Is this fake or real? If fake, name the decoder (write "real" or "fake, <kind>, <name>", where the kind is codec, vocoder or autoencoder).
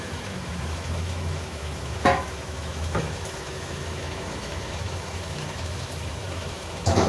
fake, autoencoder, DAC-VAE